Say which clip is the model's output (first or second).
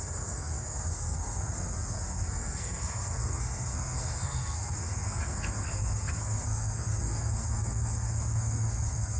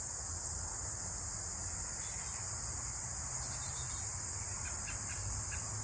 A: first